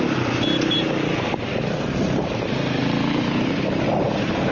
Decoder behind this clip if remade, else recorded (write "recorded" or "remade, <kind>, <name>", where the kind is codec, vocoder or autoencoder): recorded